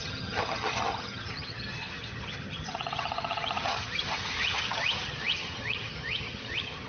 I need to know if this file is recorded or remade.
remade